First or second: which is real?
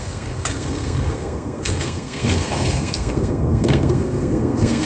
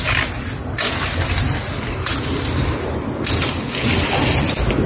second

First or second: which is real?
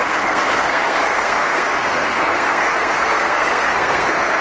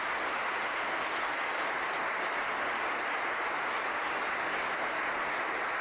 second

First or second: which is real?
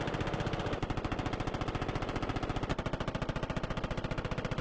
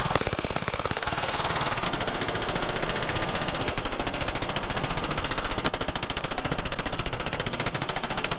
first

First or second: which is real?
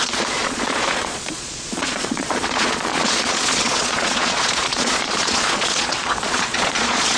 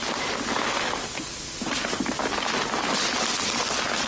second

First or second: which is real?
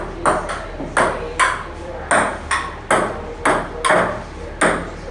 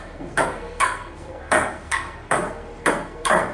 first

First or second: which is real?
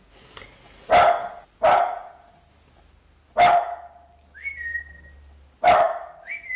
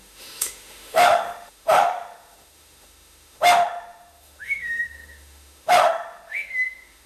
first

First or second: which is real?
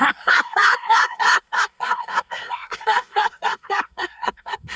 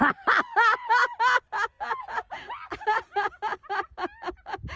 second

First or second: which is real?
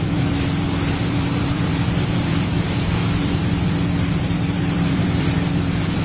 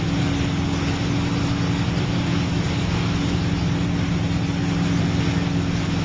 second